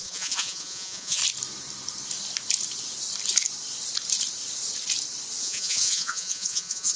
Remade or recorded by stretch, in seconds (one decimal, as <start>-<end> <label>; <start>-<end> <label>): 0.0-1.2 remade; 1.2-5.4 recorded; 5.4-7.0 remade